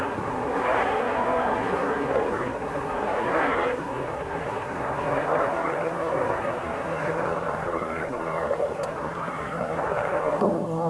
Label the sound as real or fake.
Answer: fake